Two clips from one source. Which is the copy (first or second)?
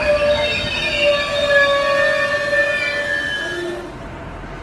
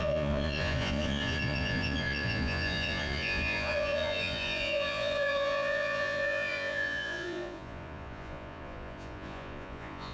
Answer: second